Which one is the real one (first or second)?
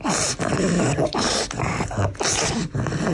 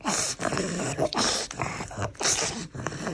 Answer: first